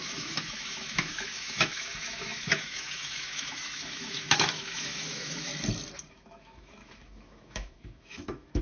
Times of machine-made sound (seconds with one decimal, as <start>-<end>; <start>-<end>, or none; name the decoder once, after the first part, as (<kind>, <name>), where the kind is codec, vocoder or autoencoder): 0.0-5.5 (autoencoder, DAC-VAE); 6.1-8.6